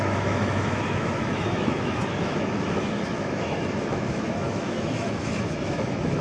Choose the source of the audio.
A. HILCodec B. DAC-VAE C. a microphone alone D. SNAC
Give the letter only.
B